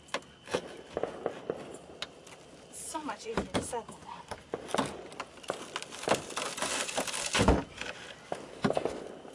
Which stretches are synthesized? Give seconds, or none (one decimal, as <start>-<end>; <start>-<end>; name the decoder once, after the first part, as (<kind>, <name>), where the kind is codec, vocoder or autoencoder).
none

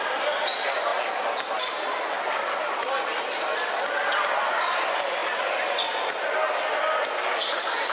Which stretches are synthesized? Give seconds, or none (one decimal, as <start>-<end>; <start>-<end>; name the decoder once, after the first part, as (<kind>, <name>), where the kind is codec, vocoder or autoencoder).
0.0-0.9 (vocoder, BigVGAN v2); 2.3-5.2; 7.3-7.9

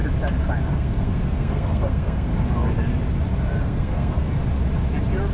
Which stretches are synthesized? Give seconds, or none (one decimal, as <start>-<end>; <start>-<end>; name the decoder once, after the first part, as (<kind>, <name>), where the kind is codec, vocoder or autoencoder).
0.7-2.3 (codec, SNAC); 3.6-4.3

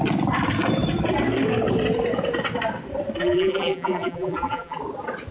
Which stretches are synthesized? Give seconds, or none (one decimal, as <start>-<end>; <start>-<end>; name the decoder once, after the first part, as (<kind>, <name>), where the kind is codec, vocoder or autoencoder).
3.2-4.8 (vocoder, BigVGAN v2)